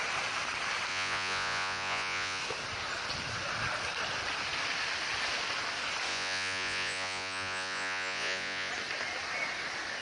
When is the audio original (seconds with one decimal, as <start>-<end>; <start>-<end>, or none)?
0.0-0.9; 2.4-6.1; 8.7-10.0